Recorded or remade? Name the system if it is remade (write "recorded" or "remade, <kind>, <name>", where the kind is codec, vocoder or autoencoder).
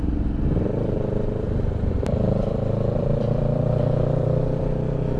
remade, vocoder, BigVGAN v2